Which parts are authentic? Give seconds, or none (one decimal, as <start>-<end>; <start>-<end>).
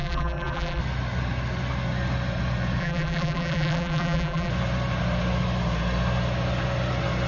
0.8-2.8; 4.5-7.3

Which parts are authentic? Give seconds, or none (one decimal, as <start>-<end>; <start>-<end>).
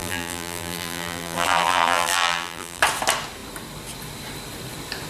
2.8-5.1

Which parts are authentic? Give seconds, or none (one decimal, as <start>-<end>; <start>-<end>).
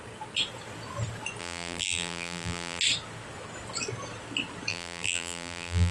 0.0-1.4; 2.8-4.7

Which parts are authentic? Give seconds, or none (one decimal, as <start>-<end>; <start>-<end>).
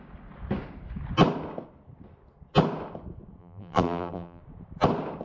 0.0-3.4; 4.4-5.2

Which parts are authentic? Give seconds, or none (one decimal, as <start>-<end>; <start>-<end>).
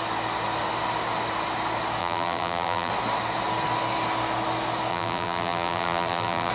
0.0-2.0; 2.9-4.9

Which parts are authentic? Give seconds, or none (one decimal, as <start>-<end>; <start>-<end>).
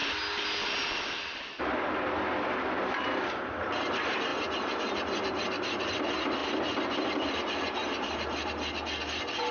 0.0-9.5